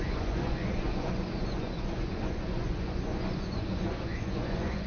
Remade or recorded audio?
remade